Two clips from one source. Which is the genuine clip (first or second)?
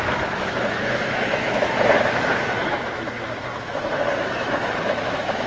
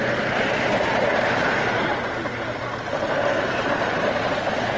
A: second